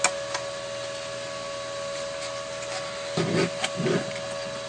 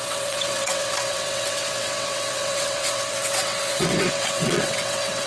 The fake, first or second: second